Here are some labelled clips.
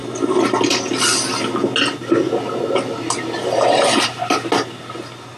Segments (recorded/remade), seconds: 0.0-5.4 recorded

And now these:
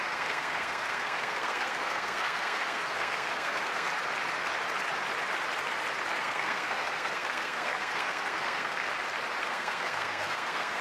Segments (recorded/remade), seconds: 0.0-3.9 remade; 3.9-6.2 recorded; 6.2-8.9 remade; 8.9-9.4 recorded; 9.4-10.8 remade

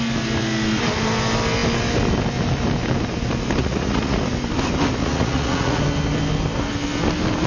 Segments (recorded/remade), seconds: 0.0-3.6 recorded; 3.6-4.2 remade; 4.2-5.0 recorded; 5.0-5.8 remade; 5.8-7.5 recorded